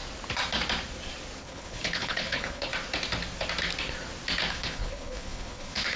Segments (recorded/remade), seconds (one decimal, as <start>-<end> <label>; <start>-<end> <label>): 0.0-1.4 recorded; 1.4-2.7 remade; 2.7-4.5 recorded; 4.5-6.0 remade